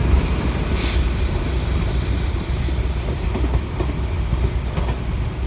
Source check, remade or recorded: remade